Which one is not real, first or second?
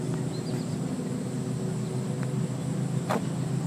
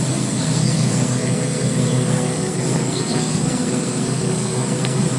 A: second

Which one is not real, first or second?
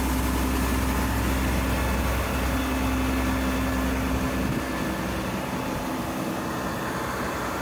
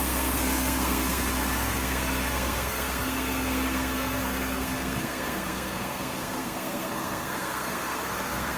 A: second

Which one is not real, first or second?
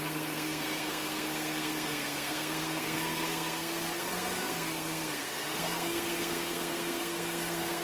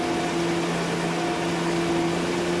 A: first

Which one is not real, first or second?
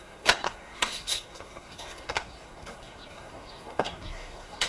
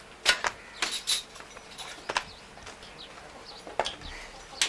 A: first